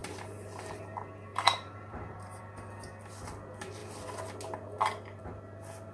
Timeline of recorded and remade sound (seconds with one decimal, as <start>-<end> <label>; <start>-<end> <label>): 0.0-0.8 remade; 0.8-1.3 recorded; 1.3-2.4 remade; 2.4-5.9 recorded